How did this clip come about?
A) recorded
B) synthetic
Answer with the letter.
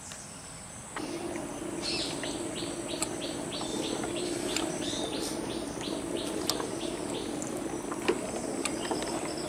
A